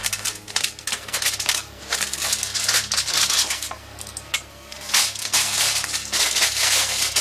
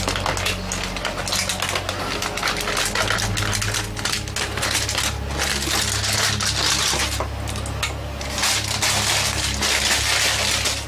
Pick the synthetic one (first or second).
first